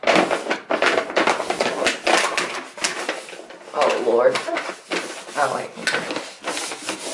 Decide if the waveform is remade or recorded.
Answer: recorded